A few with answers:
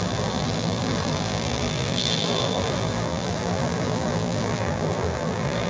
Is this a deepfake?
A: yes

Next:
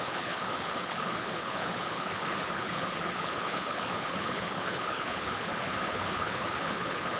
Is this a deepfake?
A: yes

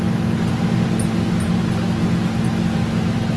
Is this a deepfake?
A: no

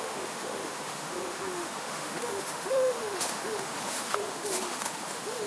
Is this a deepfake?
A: yes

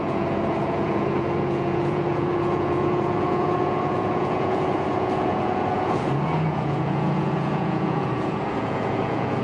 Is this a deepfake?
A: yes